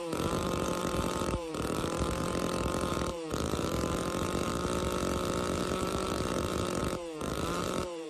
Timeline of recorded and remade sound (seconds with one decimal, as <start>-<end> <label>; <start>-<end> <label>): 0.0-4.5 remade; 4.5-5.6 recorded; 5.6-8.1 remade